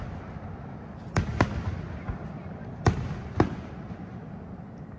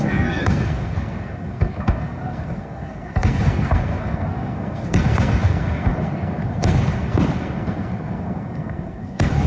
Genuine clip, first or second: first